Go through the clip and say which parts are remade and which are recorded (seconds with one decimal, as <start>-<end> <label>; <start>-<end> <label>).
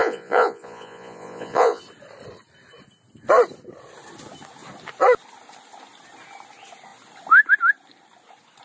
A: 0.0-1.8 remade; 1.8-8.6 recorded